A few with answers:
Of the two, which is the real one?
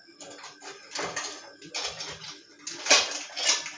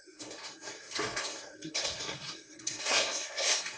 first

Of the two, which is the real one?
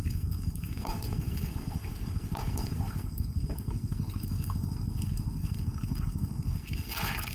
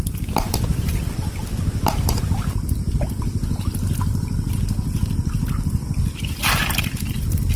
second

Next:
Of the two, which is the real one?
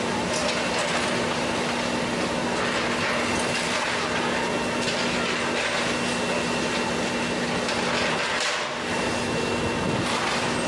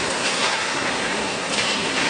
first